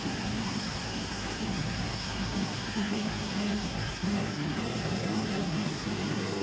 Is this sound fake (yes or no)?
yes